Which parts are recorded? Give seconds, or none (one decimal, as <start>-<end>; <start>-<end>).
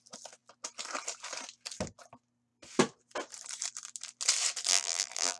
0.0-4.7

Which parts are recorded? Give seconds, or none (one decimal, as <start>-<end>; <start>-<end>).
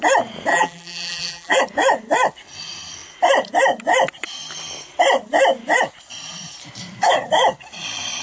0.0-0.5; 1.6-8.2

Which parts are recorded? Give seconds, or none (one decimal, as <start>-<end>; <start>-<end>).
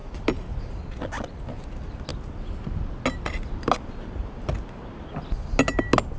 0.6-6.2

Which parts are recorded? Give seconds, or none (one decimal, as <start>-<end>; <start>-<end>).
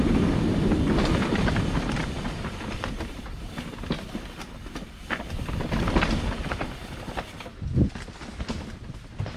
0.0-1.3; 3.5-9.4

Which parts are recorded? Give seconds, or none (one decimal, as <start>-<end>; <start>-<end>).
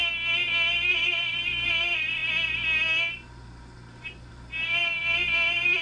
0.0-0.9; 2.2-4.3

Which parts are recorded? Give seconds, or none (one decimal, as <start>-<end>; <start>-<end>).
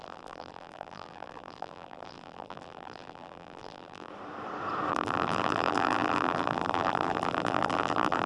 4.1-4.9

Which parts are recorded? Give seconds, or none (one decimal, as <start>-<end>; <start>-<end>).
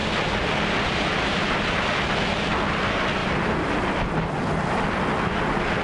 0.0-3.2; 3.9-5.8